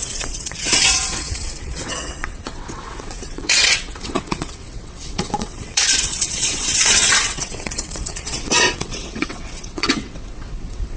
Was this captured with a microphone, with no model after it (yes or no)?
no